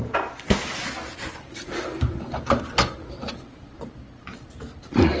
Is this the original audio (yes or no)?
yes